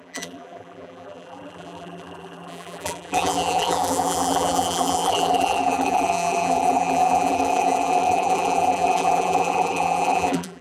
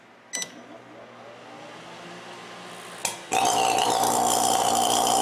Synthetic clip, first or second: first